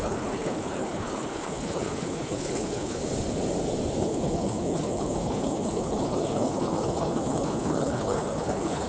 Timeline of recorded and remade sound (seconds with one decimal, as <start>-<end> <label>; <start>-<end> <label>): 0.0-3.0 remade; 3.0-4.0 recorded; 4.0-8.9 remade